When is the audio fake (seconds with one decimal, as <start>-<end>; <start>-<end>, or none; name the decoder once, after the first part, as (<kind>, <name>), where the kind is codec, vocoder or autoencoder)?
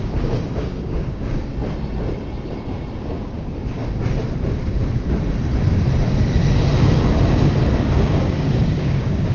0.0-1.5 (codec, DAC); 3.0-3.8; 7.9-9.3